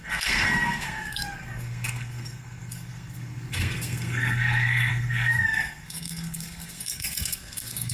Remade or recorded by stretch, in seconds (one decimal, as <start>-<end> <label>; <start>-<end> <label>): 0.0-7.9 remade